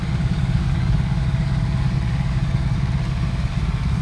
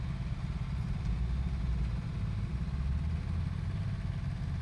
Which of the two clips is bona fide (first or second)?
second